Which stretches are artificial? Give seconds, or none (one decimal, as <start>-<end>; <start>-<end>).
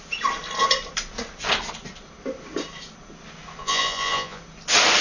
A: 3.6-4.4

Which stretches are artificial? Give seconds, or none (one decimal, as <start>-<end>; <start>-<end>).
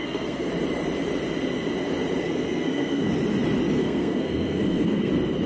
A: 0.0-0.5; 2.2-3.1; 3.8-5.1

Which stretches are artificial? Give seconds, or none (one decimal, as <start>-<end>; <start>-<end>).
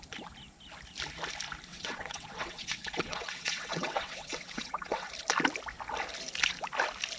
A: 1.7-5.1